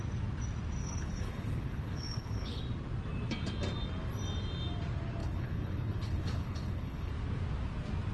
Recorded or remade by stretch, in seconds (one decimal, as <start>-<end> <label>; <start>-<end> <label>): 0.0-0.8 recorded; 0.8-2.6 remade; 2.6-5.2 recorded; 5.2-7.1 remade; 7.1-8.1 recorded